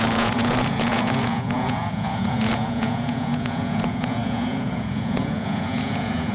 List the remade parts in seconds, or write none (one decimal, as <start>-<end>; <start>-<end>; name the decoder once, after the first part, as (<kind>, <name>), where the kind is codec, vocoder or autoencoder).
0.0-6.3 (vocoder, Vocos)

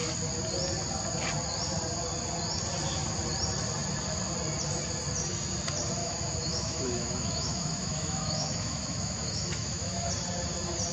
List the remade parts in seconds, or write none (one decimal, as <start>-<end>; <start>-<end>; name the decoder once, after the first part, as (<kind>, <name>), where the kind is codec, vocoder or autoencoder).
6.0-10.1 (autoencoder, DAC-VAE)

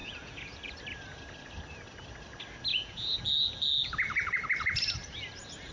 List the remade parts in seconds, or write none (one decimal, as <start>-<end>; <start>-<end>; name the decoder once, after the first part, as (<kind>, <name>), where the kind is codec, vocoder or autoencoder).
0.0-0.7 (vocoder, Vocos); 2.7-3.2

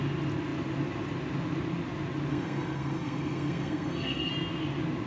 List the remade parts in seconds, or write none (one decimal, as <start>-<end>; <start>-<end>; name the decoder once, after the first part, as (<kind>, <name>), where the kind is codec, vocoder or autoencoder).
2.3-4.3 (codec, SNAC)

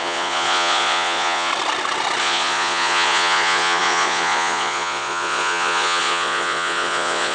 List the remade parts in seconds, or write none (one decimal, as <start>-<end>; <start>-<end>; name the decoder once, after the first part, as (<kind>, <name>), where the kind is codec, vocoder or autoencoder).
0.0-1.5 (vocoder, Vocos); 2.2-7.3